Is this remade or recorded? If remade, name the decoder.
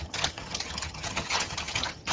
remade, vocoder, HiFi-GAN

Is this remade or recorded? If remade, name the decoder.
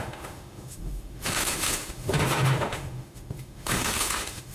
remade, autoencoder, DAC-VAE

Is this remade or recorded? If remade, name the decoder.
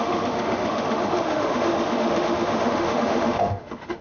remade, autoencoder, DAC-VAE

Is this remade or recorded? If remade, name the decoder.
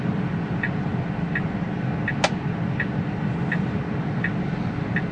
recorded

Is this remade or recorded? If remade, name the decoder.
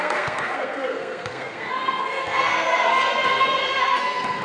remade, codec, SNAC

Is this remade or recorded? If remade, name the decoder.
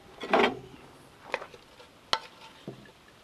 recorded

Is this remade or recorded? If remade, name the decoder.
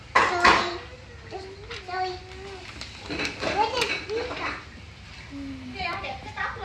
recorded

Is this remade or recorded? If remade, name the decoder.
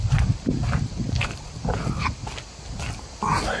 recorded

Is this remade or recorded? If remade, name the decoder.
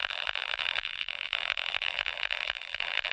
remade, vocoder, BigVGAN v2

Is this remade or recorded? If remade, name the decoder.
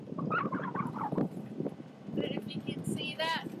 remade, vocoder, BigVGAN v2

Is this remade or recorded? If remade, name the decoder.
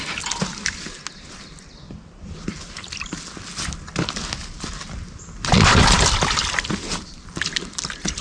recorded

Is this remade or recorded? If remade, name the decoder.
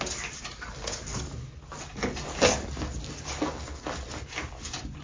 recorded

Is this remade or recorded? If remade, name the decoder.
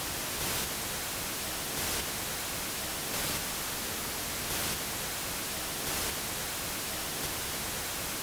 recorded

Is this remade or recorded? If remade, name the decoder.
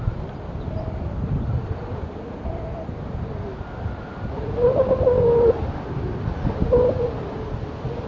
recorded